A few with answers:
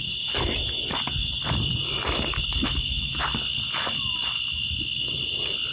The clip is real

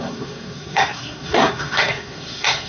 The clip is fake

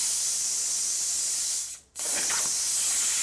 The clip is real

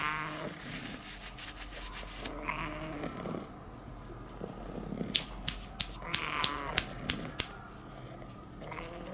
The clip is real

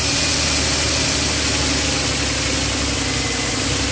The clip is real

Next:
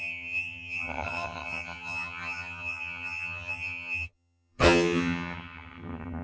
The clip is fake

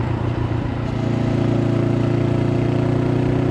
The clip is real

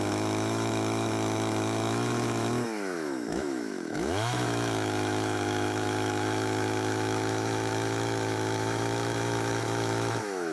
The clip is fake